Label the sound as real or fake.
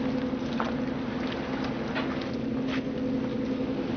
real